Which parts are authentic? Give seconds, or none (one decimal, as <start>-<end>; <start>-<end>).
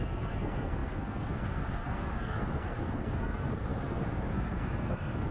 none